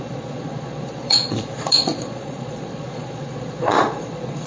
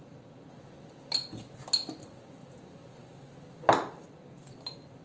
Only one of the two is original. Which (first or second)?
second